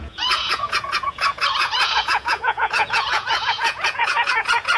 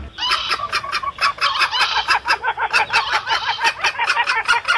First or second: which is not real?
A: first